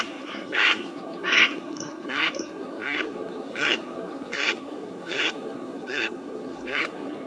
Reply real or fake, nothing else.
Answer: fake